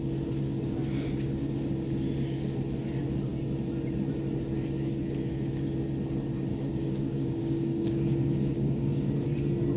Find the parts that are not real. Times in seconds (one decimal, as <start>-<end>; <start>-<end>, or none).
6.5-9.1